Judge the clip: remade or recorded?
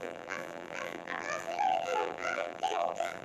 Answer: remade